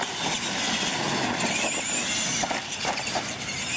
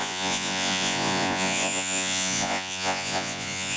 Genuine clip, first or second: first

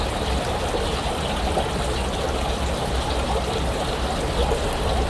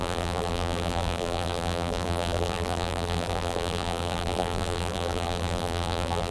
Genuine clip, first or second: first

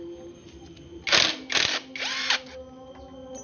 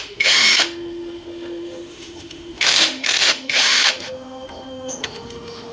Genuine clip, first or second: first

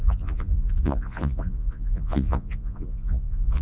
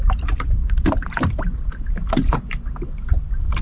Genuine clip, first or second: second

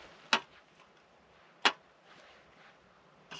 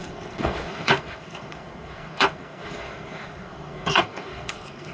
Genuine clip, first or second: first